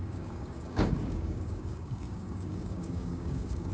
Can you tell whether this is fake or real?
fake